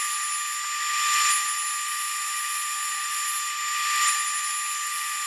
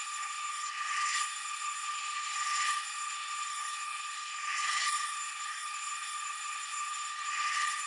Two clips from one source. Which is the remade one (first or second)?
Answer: second